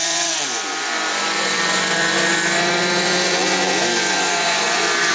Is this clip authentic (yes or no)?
no